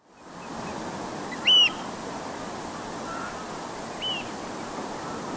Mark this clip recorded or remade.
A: recorded